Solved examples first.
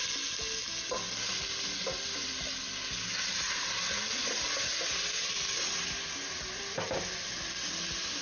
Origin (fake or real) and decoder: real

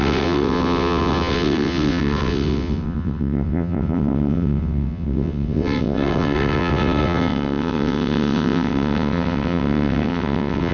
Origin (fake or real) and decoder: fake, vocoder, WaveNeXt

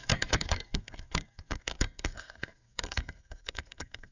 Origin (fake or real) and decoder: fake, codec, SNAC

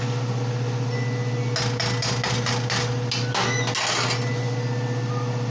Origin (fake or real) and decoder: real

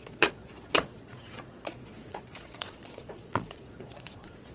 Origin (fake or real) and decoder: fake, vocoder, Vocos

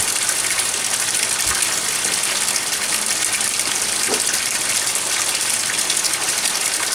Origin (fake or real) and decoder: real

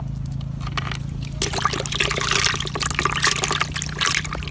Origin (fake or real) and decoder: real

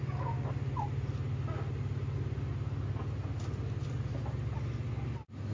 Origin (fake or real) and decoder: real